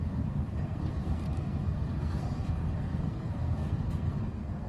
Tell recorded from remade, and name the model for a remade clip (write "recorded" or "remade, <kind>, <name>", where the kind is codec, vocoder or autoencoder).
remade, codec, SNAC